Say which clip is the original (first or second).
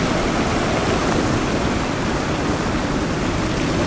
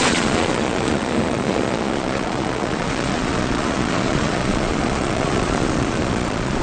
first